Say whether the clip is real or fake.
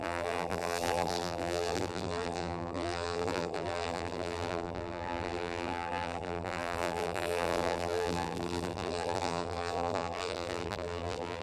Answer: fake